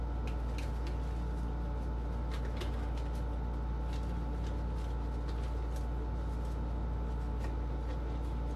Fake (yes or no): no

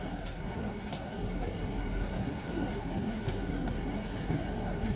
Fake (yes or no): yes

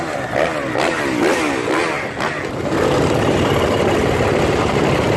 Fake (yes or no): no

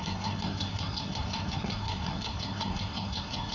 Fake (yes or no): yes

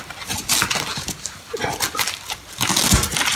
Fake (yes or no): no